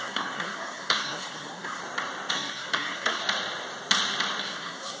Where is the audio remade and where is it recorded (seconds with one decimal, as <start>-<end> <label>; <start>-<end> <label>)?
0.0-1.8 remade; 1.8-2.3 recorded; 2.3-3.2 remade; 3.2-4.4 recorded; 4.4-5.0 remade